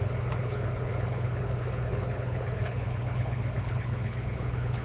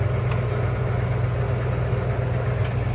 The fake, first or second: first